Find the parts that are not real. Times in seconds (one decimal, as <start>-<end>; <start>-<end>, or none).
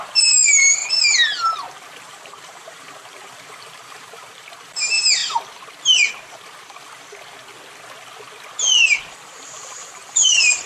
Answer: 0.0-0.8; 2.0-5.2; 9.0-10.7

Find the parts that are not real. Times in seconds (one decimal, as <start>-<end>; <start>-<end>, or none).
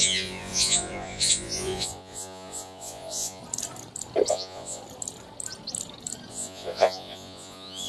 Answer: 0.0-3.4; 4.3-4.8; 6.3-7.9